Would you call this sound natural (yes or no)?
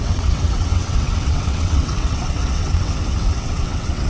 no